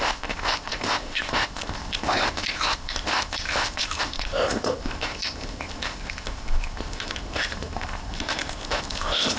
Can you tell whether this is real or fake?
fake